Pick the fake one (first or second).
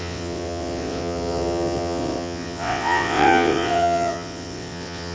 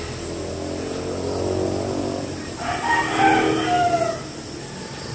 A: first